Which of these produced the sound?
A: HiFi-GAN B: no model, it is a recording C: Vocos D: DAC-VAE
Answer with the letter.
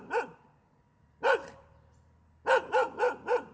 B